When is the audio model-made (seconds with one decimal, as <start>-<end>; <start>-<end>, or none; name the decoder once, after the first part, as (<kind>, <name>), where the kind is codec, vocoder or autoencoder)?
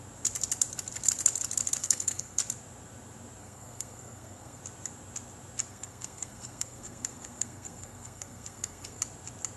1.8-2.4 (codec, SNAC); 3.4-4.6; 5.7-9.0